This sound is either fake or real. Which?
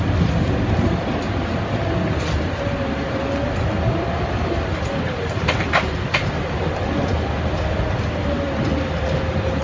fake